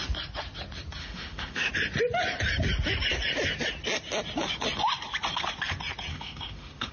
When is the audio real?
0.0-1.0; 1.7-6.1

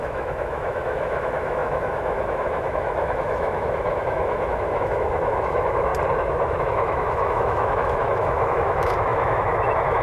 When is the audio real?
5.9-6.6

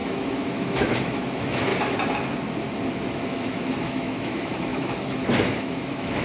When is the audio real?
1.7-2.9

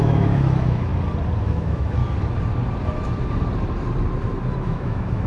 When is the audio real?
0.9-1.4; 2.0-4.6